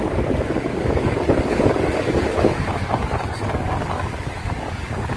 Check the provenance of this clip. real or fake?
fake